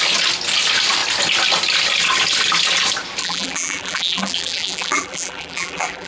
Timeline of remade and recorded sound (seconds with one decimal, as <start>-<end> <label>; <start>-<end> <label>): 0.0-3.2 recorded; 3.2-6.1 remade